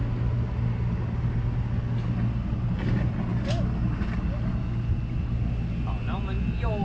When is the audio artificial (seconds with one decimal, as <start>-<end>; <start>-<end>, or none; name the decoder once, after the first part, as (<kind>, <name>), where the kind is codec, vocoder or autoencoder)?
none